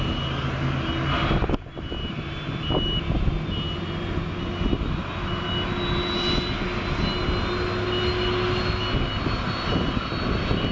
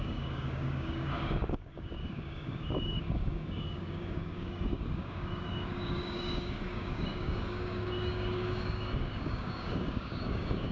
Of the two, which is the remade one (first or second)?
second